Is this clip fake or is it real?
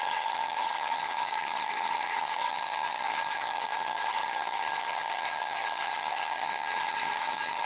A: fake